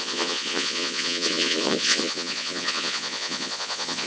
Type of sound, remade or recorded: remade